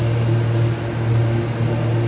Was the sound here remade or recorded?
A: recorded